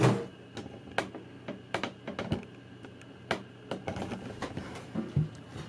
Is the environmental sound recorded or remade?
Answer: recorded